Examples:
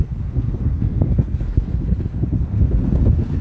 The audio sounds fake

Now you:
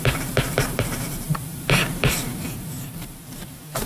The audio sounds fake